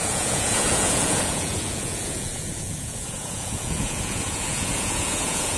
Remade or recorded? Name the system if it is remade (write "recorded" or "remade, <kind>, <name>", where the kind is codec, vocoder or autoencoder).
remade, vocoder, Vocos